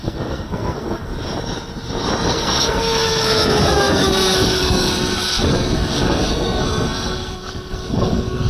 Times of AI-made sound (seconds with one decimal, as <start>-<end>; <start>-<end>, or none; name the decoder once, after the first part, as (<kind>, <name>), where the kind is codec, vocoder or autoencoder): 0.0-1.1 (codec, SNAC); 2.3-8.5